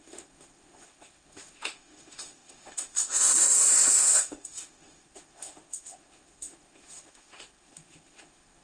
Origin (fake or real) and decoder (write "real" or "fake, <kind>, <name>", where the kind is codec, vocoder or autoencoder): fake, autoencoder, DAC-VAE